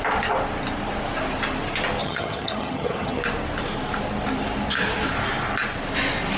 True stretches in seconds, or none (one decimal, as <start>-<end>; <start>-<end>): 0.0-2.0; 3.2-6.4